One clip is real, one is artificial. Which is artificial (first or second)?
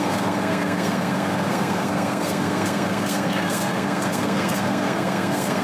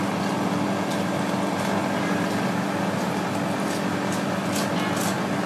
first